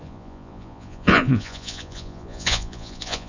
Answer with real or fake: fake